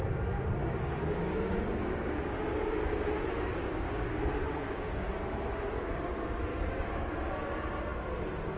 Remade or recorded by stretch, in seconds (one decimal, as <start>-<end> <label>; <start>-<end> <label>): 0.0-0.6 recorded; 0.6-3.0 remade; 3.0-3.5 recorded; 3.5-5.1 remade; 5.1-6.5 recorded; 6.5-7.3 remade; 7.3-8.6 recorded

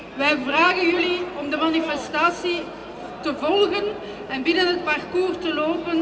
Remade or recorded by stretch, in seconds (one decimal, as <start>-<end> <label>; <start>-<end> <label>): 0.0-0.4 recorded; 0.4-1.0 remade; 1.0-6.0 recorded